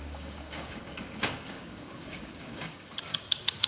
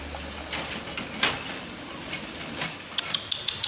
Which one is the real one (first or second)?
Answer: second